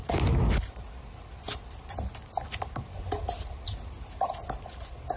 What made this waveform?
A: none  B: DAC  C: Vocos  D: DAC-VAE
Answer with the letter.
A